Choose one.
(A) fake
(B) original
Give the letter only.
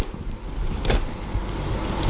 B